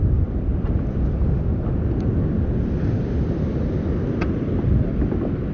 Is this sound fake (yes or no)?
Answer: no